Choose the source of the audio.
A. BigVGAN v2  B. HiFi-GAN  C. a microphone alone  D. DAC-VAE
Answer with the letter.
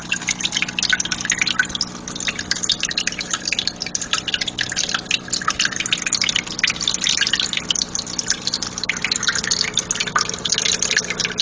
C